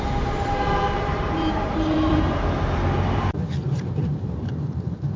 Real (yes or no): no